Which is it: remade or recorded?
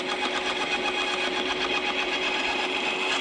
recorded